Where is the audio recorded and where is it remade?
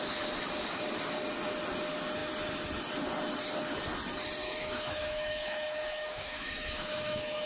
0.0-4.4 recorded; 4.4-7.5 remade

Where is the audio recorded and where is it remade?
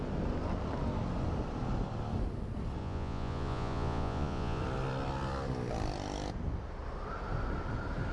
0.0-2.8 recorded; 2.8-4.6 remade; 4.6-8.1 recorded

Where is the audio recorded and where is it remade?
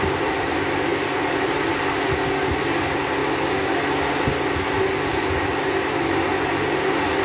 0.0-7.2 recorded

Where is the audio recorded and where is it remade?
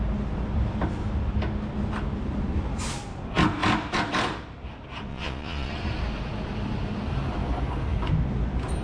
0.0-5.1 recorded; 5.1-5.7 remade; 5.7-8.8 recorded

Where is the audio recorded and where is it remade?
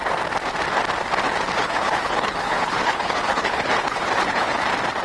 0.0-1.6 recorded; 1.6-4.6 remade; 4.6-5.0 recorded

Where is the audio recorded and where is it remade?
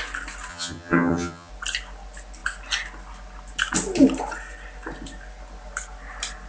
0.0-0.5 recorded; 0.5-1.5 remade; 1.5-6.5 recorded